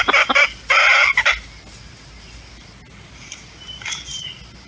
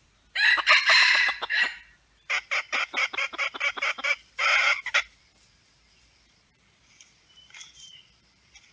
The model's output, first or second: second